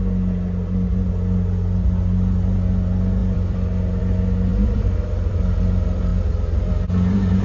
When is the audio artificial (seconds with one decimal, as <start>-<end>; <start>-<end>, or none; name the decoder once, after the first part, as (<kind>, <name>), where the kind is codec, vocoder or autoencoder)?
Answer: 3.2-4.0 (vocoder, BigVGAN v2); 4.5-5.6; 6.1-6.7